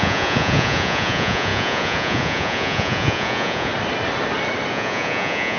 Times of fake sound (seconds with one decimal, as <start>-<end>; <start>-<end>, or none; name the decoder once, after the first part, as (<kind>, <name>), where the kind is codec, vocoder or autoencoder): 0.0-3.7 (vocoder, Vocos); 4.7-5.6